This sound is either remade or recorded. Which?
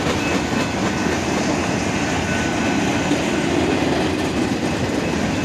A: recorded